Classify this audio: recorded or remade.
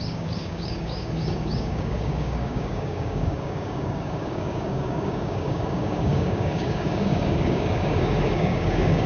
remade